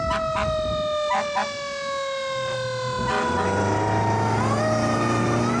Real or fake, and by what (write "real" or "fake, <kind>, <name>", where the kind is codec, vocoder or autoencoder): real